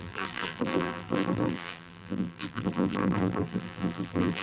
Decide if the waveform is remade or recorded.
remade